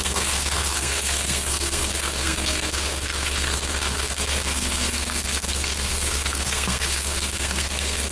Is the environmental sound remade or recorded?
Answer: remade